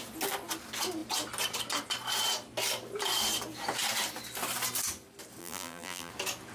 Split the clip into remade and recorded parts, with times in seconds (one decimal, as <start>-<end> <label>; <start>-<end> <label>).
0.0-5.4 recorded; 5.4-6.1 remade; 6.1-6.5 recorded